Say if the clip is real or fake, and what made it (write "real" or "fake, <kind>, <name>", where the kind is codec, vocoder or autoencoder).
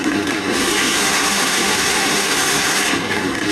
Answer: fake, codec, SNAC